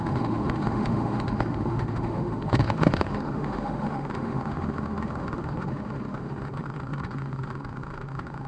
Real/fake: fake